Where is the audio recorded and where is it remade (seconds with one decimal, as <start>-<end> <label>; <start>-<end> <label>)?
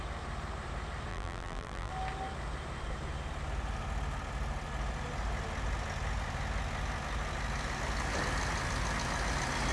0.0-1.1 recorded; 1.1-1.9 remade; 1.9-9.7 recorded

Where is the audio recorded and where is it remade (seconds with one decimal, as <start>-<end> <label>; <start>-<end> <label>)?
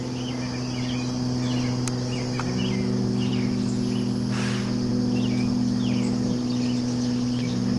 0.0-7.8 recorded